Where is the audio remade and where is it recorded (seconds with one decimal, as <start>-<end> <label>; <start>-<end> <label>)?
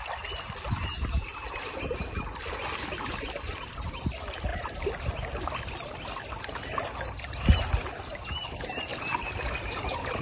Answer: 0.0-8.9 recorded; 8.9-10.2 remade